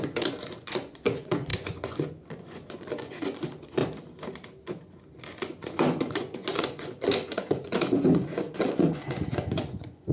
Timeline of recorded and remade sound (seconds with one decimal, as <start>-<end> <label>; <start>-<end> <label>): 0.0-3.8 remade; 3.8-5.3 recorded; 5.3-10.1 remade